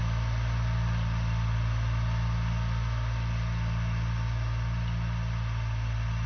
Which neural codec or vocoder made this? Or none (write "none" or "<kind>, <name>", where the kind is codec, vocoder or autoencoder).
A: none